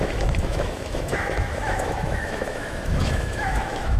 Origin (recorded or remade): remade